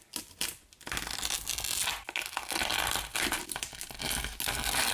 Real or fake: real